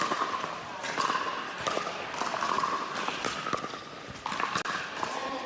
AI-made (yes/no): yes